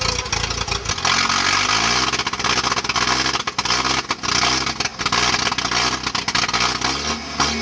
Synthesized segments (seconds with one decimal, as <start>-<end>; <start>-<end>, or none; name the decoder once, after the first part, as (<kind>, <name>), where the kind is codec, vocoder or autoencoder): none